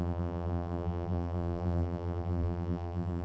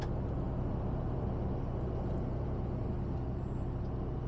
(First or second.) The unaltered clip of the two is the second